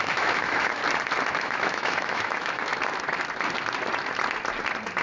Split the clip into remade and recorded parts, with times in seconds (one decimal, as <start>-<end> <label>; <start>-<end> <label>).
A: 0.0-0.8 remade; 0.8-1.3 recorded; 1.3-2.7 remade; 2.7-5.0 recorded